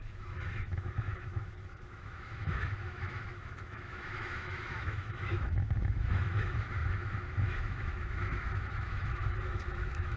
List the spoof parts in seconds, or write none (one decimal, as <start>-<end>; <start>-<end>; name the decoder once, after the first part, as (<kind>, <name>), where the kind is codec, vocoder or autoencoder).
0.0-10.2 (autoencoder, DAC-VAE)